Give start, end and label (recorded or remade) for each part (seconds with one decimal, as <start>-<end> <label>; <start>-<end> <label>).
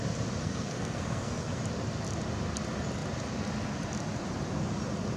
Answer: 0.0-0.4 recorded; 0.4-1.6 remade; 1.6-5.2 recorded